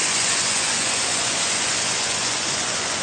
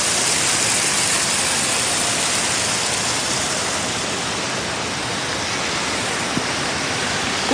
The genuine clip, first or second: second